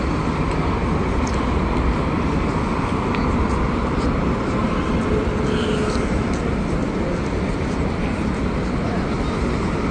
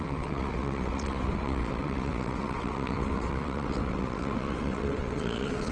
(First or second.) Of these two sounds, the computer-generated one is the second